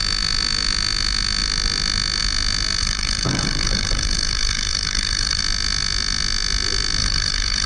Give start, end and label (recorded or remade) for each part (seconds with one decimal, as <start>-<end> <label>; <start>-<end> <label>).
0.0-2.8 recorded; 2.8-5.4 remade; 5.4-7.0 recorded; 7.0-7.7 remade